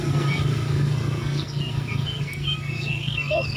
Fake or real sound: fake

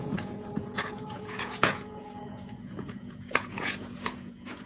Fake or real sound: fake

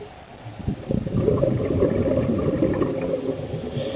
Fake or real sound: fake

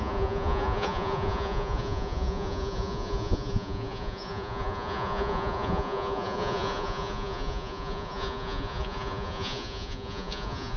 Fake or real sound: fake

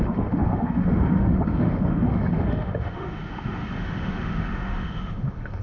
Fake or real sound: fake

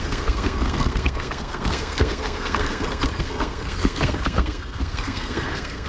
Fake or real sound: fake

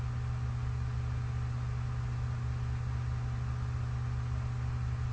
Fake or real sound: real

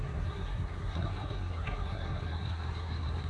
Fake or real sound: fake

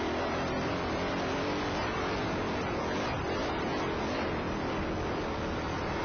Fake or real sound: real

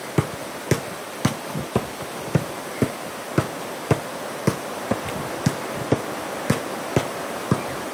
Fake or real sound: real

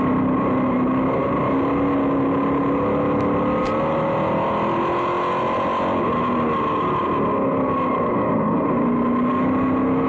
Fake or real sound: real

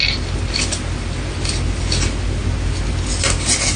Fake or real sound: real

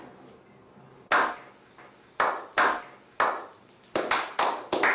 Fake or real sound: real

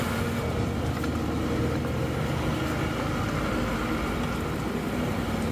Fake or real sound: real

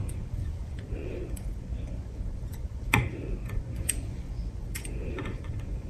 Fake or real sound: fake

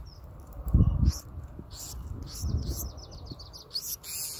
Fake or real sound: real